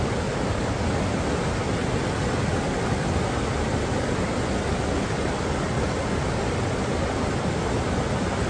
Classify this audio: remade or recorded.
recorded